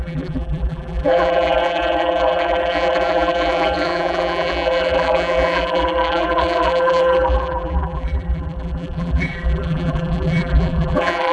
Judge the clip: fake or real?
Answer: fake